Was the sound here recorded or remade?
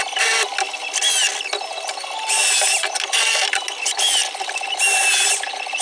recorded